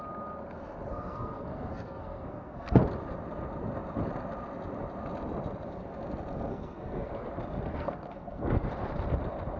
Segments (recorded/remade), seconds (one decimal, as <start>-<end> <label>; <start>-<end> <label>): 0.0-0.9 recorded; 0.9-2.8 remade; 2.8-6.5 recorded; 6.5-7.3 remade; 7.3-7.7 recorded; 7.7-8.7 remade; 8.7-9.6 recorded